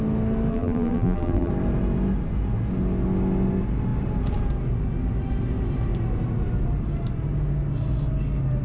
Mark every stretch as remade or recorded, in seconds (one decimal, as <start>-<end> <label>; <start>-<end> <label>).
0.0-0.5 recorded; 0.5-1.5 remade; 1.5-8.6 recorded